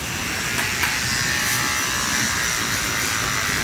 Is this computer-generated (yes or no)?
no